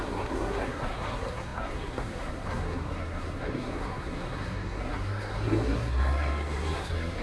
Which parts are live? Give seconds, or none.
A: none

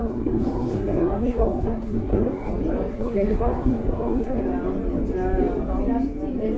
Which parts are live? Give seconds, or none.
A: 2.5-2.9; 4.4-6.6

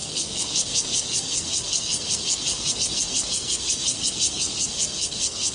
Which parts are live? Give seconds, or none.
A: none

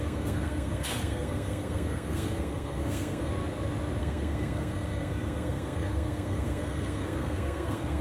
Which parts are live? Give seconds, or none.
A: 3.3-4.0